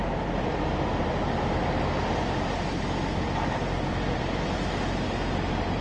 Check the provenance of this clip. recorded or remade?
recorded